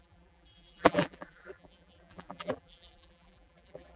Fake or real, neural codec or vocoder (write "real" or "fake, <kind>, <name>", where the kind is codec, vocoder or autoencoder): fake, vocoder, BigVGAN v2